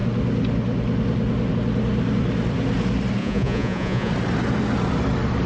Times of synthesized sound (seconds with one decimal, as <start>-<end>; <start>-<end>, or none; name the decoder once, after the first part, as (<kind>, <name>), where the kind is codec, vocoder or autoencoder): 3.2-4.1 (vocoder, Vocos)